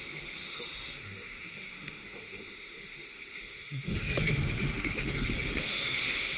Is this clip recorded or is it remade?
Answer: remade